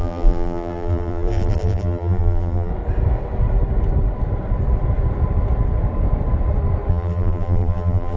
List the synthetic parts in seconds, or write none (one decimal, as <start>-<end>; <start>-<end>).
0.0-2.7; 6.9-8.2